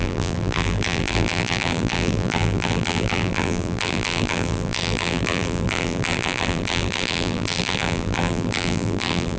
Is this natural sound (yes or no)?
no